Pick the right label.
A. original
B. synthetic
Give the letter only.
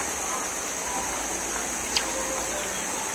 A